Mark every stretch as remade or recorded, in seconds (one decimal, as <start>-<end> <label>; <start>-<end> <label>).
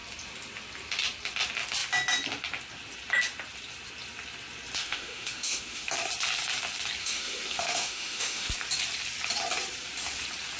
0.0-4.8 recorded; 4.8-5.9 remade; 5.9-7.0 recorded; 7.0-8.5 remade; 8.5-10.6 recorded